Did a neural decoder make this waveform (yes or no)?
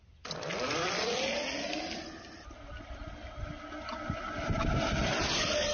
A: no